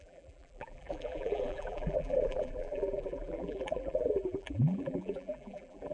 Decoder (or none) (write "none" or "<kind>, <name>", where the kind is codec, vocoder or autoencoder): vocoder, BigVGAN v2